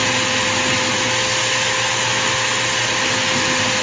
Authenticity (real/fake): real